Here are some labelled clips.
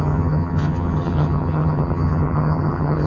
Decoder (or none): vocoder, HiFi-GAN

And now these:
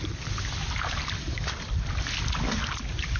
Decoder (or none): none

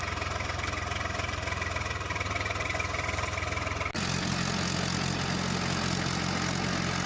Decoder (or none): none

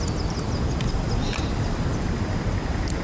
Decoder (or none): none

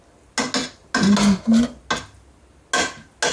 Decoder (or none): none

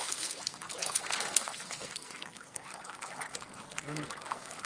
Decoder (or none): codec, SNAC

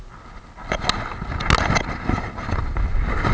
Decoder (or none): none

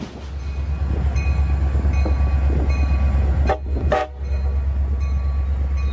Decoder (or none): none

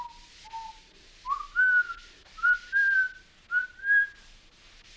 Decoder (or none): none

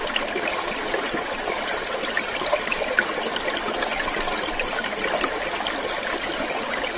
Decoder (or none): none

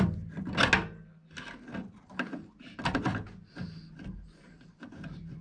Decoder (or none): none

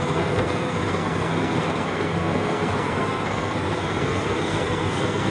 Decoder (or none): codec, SNAC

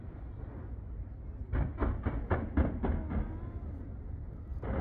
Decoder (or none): none